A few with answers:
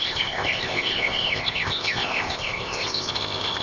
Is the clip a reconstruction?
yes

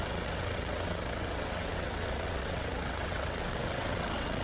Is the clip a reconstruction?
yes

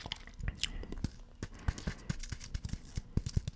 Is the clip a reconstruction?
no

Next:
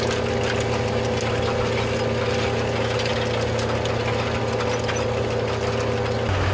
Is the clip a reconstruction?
no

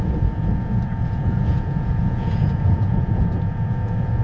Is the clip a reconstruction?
yes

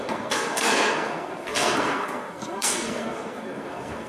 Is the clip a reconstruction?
yes